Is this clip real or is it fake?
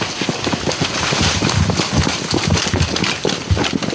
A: real